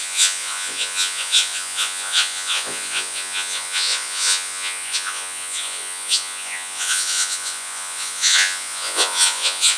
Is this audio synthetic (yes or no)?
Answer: yes